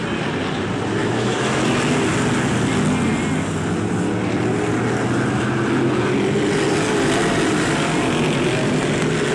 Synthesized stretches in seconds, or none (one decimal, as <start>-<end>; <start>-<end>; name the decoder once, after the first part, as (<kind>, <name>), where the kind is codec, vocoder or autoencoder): 1.0-1.6 (autoencoder, DAC-VAE)

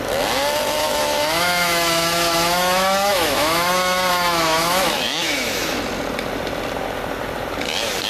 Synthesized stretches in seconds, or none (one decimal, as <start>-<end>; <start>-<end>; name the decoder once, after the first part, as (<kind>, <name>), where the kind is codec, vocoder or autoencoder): 0.8-5.7 (autoencoder, DAC-VAE)

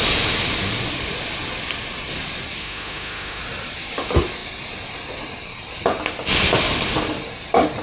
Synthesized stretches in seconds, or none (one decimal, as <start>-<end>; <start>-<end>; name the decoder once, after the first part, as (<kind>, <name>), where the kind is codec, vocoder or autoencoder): 2.6-3.4 (autoencoder, DAC-VAE)

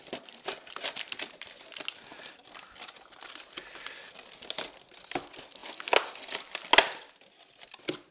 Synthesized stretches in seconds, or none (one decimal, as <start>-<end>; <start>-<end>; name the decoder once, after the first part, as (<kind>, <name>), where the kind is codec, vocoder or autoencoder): none

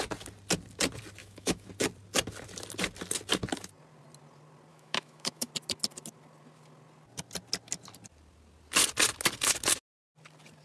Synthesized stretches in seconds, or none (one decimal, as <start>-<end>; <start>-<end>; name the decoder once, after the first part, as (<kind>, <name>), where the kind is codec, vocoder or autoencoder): 1.2-1.7 (autoencoder, DAC-VAE); 4.7-5.5

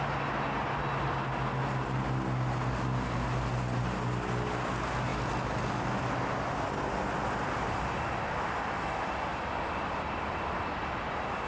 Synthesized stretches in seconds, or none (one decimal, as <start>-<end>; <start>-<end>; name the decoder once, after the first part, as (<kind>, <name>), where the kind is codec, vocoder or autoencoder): none